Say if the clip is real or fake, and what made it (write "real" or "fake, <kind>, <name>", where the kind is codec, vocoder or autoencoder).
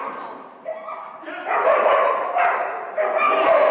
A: real